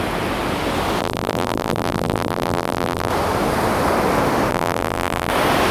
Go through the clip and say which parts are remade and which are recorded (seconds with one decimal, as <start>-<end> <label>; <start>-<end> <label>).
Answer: 0.0-1.0 recorded; 1.0-3.1 remade; 3.1-4.5 recorded; 4.5-5.3 remade; 5.3-5.7 recorded